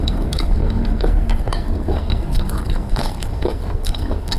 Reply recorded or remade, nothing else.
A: remade